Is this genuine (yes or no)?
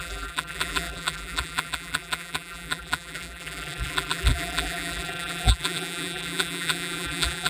no